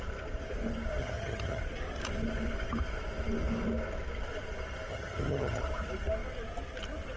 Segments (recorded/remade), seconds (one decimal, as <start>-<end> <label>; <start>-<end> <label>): 0.0-1.0 recorded; 1.0-1.6 remade; 1.6-4.9 recorded; 4.9-5.6 remade; 5.6-7.2 recorded

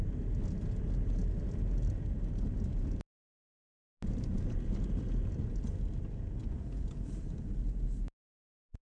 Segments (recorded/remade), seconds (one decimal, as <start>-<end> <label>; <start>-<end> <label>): 0.0-6.4 recorded; 6.4-7.0 remade; 7.0-9.0 recorded

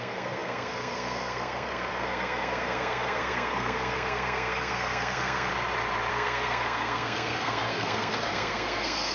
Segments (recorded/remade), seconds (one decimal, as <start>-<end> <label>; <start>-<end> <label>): 0.0-5.5 remade; 5.5-6.1 recorded; 6.1-9.1 remade

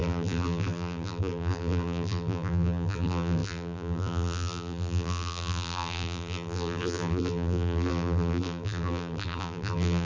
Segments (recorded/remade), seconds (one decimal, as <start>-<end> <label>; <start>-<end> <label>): 0.0-10.0 remade

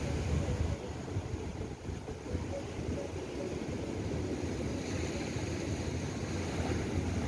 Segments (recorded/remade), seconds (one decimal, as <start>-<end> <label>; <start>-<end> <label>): 0.0-7.3 recorded

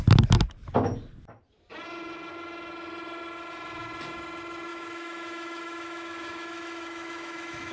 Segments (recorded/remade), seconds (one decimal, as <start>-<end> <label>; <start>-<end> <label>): 0.0-4.7 recorded; 4.7-7.7 remade

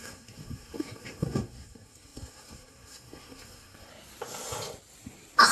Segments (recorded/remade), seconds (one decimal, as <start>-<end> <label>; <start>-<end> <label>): 0.0-3.9 remade; 3.9-5.5 recorded